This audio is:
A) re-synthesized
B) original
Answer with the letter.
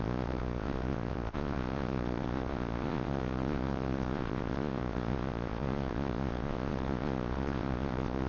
A